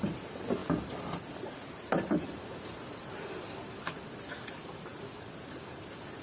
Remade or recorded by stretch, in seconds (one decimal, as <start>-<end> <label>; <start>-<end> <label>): 0.0-6.2 recorded